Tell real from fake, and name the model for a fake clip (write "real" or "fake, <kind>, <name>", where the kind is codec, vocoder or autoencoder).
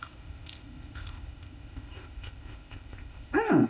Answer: fake, codec, ZipCodec